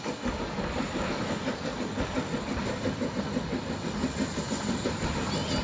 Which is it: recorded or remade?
recorded